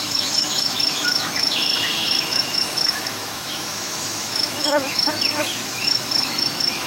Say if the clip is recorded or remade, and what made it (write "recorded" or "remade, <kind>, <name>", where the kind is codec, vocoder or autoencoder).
remade, autoencoder, DAC-VAE